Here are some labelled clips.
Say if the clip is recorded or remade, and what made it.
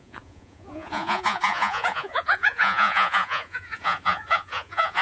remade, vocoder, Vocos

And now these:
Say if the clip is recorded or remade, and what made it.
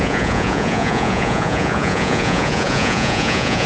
remade, vocoder, Vocos